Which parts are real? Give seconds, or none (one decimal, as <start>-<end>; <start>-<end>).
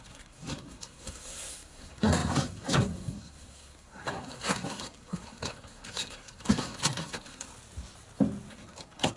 7.5-8.5